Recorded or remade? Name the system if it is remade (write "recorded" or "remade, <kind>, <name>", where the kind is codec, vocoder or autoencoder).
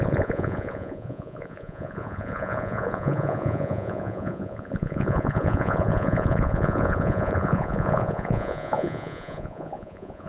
remade, vocoder, Vocos